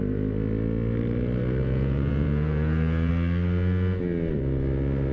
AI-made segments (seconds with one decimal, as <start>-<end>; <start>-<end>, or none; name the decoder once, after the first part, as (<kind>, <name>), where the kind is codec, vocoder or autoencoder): 1.6-3.1 (vocoder, Vocos)